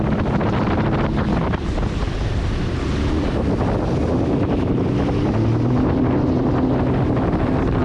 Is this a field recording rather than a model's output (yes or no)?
yes